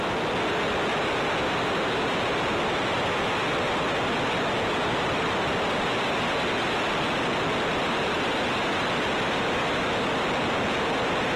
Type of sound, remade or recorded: recorded